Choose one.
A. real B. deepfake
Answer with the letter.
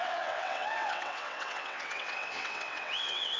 B